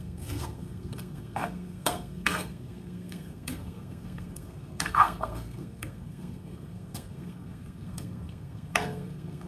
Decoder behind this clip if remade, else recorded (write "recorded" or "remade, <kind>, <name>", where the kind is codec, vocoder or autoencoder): remade, codec, SNAC